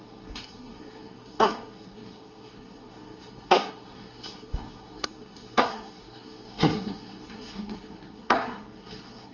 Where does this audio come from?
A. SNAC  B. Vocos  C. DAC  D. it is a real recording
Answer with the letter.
A